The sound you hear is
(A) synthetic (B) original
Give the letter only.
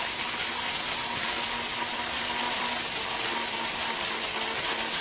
B